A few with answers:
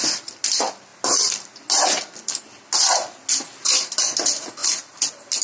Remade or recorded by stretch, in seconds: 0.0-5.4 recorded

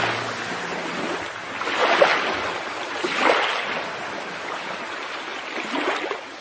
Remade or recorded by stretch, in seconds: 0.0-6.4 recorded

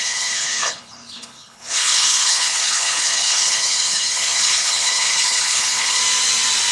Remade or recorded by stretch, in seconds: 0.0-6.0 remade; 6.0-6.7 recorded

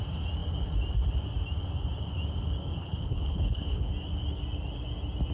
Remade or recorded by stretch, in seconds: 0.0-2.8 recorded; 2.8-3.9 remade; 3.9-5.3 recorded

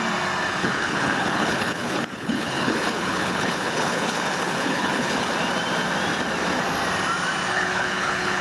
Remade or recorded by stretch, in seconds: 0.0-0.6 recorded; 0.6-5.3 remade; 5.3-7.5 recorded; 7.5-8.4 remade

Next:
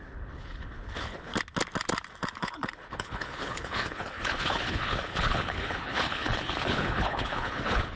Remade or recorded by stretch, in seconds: 0.0-1.3 remade; 1.3-2.4 recorded; 2.4-8.0 remade

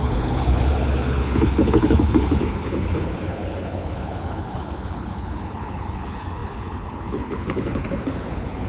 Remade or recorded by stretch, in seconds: 0.0-8.7 remade